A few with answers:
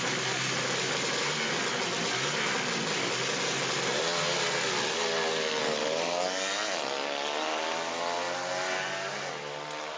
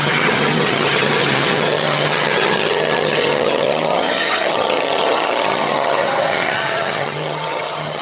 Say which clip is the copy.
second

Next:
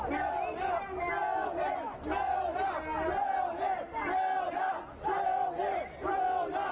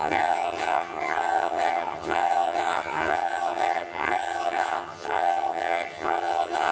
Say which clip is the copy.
second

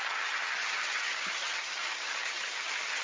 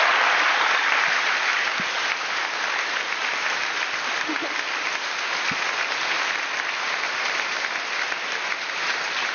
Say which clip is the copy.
first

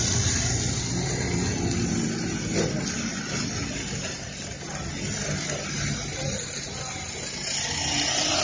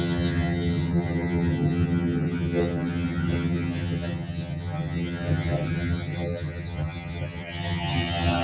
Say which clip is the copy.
second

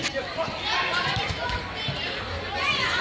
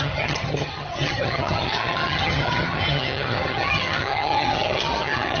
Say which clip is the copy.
second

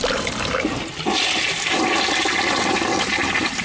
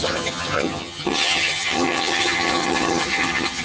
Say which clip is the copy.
second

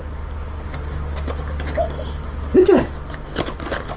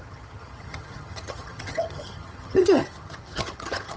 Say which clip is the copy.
second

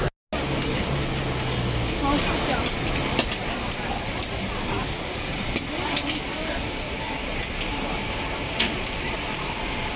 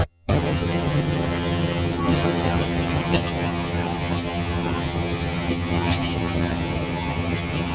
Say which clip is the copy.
second